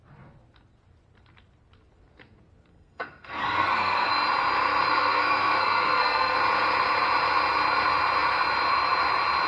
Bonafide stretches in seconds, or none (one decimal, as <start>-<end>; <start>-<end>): 0.0-2.7; 4.1-4.9; 6.4-9.5